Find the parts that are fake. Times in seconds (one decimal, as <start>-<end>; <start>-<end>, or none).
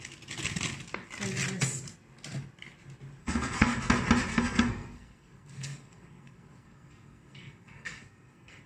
3.2-3.9; 4.3-8.7